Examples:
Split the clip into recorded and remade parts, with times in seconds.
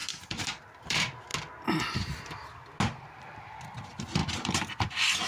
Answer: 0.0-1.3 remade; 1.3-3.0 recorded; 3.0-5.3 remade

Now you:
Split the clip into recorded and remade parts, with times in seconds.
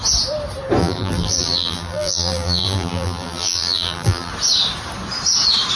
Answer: 0.0-0.8 recorded; 0.8-4.3 remade; 4.3-5.8 recorded